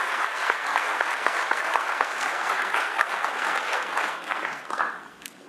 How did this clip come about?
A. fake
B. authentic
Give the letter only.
A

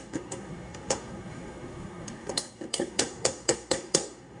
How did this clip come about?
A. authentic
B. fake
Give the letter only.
B